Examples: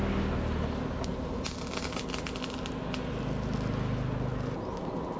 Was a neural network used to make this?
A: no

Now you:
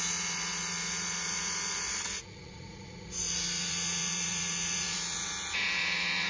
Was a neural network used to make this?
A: yes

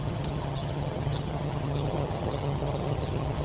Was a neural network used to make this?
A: yes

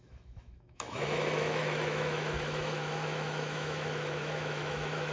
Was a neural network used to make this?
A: yes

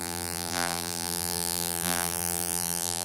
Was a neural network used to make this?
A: yes